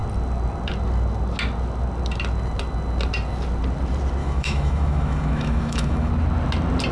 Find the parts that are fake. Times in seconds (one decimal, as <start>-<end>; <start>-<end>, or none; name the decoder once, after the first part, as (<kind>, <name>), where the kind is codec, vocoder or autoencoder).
4.2-6.1 (autoencoder, DAC-VAE)